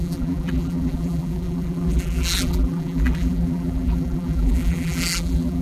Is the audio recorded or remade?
remade